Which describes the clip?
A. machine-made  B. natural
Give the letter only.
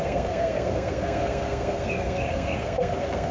A